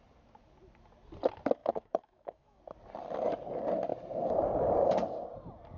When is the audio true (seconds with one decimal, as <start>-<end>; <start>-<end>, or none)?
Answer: 0.0-1.6; 2.6-5.8